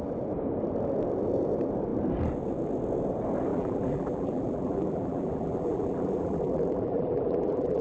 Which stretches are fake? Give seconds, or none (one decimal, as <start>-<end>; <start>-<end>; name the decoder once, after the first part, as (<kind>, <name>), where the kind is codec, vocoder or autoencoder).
3.5-7.8 (vocoder, BigVGAN v2)